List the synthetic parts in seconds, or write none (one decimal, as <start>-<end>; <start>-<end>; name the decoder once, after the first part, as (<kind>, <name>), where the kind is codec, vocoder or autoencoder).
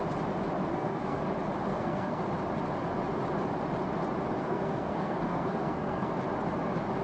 0.7-1.2 (codec, SNAC); 1.7-2.2; 4.4-6.1